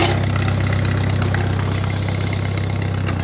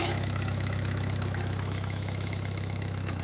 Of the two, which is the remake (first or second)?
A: second